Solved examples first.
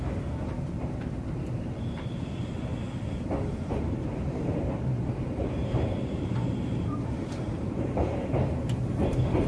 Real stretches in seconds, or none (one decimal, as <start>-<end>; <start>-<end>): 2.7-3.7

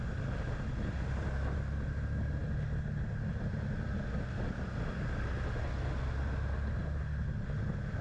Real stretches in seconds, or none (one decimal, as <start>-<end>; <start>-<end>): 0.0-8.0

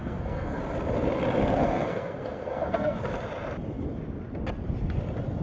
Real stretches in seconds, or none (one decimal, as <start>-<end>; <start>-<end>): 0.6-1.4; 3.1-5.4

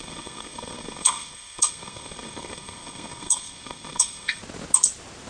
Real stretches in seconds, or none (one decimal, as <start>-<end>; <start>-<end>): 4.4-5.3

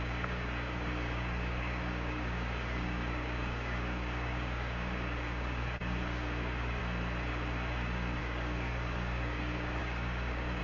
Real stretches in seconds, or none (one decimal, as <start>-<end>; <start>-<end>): 6.8-8.2

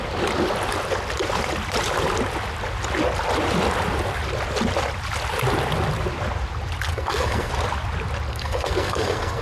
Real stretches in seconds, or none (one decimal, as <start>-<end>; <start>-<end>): 0.0-6.9; 7.5-8.3